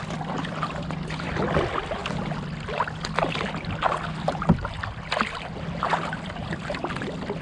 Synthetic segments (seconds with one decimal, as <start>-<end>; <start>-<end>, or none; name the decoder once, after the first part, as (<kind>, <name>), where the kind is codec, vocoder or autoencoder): none